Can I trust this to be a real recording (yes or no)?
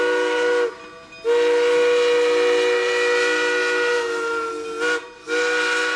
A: yes